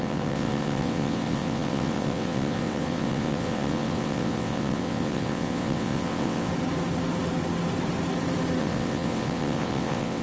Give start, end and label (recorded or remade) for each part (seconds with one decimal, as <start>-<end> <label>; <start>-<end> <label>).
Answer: 0.0-6.5 remade; 6.5-8.6 recorded; 8.6-10.2 remade